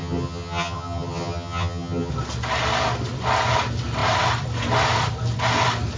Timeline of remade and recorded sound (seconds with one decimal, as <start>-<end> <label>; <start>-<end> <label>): 0.0-2.1 remade; 2.1-6.0 recorded